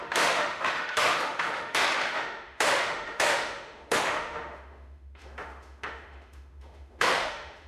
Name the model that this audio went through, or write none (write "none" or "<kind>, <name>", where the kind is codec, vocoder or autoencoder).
autoencoder, DAC-VAE